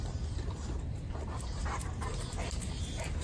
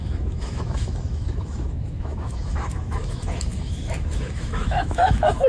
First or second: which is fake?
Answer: second